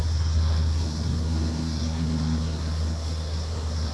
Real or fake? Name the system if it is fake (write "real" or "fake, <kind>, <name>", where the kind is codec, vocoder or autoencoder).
fake, codec, SNAC